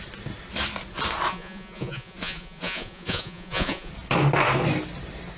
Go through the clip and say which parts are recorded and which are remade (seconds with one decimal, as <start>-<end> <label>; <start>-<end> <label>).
0.0-1.3 recorded; 1.3-3.9 remade; 3.9-5.4 recorded